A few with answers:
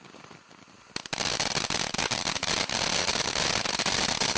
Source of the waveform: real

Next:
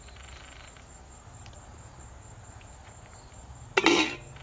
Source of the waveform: real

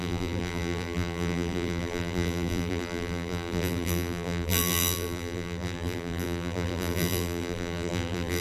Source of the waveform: fake